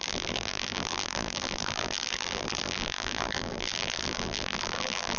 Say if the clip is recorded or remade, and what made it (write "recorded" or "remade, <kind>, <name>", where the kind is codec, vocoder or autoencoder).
remade, vocoder, BigVGAN v2